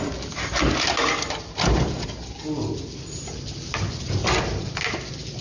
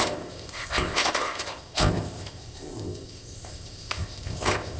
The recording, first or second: first